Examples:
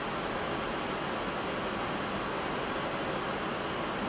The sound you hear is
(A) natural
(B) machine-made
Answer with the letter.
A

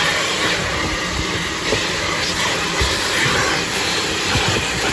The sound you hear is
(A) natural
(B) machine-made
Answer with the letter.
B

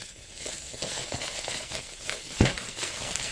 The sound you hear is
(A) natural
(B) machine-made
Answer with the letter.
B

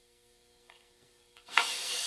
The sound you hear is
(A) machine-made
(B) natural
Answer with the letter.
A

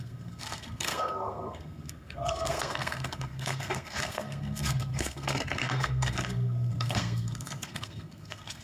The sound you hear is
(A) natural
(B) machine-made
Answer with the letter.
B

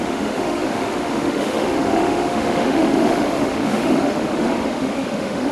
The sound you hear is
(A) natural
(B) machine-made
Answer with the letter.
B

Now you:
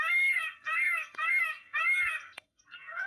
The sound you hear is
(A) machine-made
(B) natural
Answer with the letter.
A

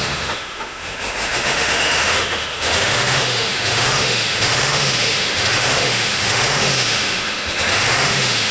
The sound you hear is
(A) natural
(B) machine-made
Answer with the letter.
B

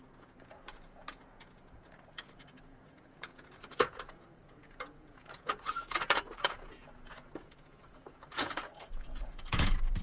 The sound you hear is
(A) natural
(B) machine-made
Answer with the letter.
B